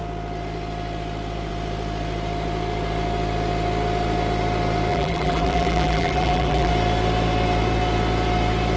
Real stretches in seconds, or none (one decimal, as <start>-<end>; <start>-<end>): 0.0-4.9; 6.7-8.8